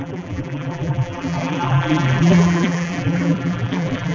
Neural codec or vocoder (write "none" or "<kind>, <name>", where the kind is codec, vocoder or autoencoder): vocoder, BigVGAN v2